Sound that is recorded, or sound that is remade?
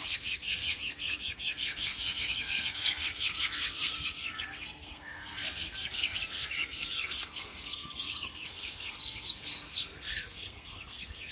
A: remade